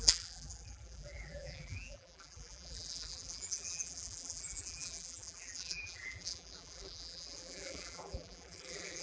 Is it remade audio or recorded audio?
remade